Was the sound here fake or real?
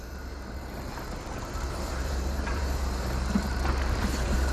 fake